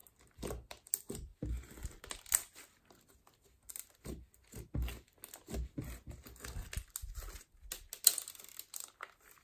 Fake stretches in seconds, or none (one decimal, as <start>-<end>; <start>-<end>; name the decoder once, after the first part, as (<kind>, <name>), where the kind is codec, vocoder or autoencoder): none